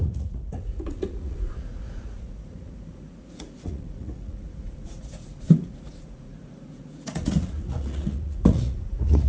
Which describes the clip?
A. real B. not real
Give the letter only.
B